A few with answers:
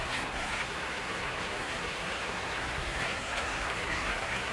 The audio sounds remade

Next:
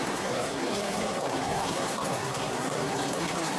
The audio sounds remade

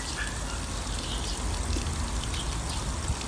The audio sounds recorded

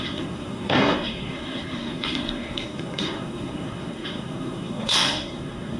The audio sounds remade